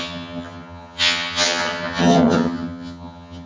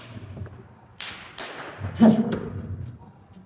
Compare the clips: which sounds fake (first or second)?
first